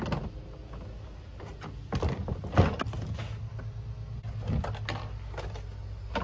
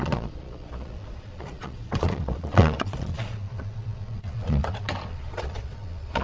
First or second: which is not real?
second